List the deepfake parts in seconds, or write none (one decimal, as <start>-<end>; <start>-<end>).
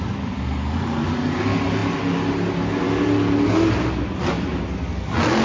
none